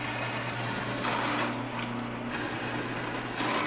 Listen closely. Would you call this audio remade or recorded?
recorded